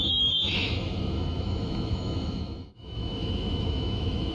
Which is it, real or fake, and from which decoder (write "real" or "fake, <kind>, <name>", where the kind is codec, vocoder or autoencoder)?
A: fake, autoencoder, DAC-VAE